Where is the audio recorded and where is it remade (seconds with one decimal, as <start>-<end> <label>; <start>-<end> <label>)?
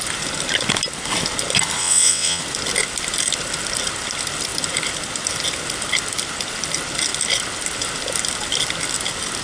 0.0-1.8 recorded; 1.8-2.4 remade; 2.4-9.4 recorded